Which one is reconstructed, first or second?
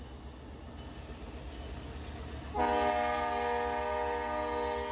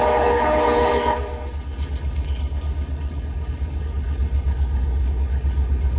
second